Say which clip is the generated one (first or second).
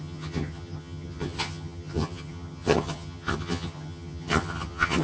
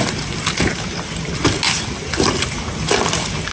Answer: first